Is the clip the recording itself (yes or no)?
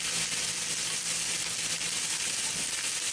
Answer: yes